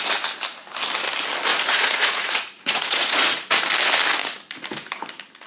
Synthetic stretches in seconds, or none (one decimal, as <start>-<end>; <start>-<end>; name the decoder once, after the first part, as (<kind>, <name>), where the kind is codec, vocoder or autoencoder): 1.5-3.6 (vocoder, Vocos); 4.2-4.7